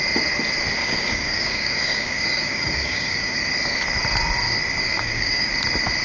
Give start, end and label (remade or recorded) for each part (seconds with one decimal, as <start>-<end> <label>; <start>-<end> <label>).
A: 0.0-0.8 recorded; 0.8-3.4 remade; 3.4-4.8 recorded; 4.8-5.5 remade; 5.5-6.0 recorded